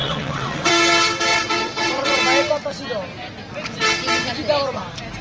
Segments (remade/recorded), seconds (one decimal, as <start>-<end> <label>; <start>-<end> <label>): 0.0-0.7 remade; 0.7-1.3 recorded; 1.3-2.2 remade; 2.2-5.2 recorded